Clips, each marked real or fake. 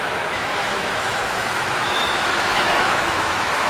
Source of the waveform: fake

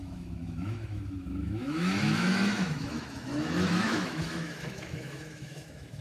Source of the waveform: fake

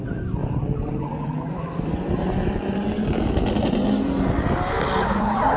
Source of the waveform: real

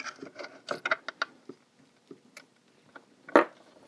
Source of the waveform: real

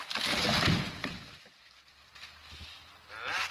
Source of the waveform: real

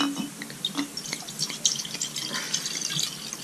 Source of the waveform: real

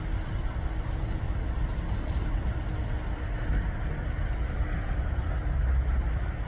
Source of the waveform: real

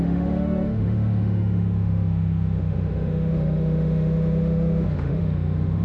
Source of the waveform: fake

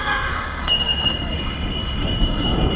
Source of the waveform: fake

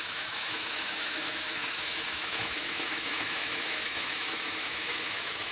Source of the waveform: fake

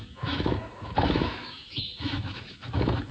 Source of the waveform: fake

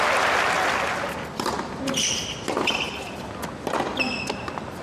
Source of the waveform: real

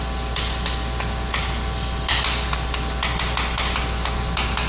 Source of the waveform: real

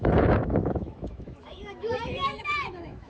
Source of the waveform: fake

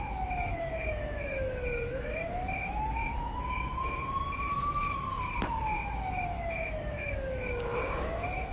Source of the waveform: fake